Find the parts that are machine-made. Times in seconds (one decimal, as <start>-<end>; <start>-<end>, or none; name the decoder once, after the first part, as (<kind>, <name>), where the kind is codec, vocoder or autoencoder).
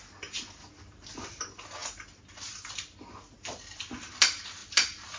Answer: none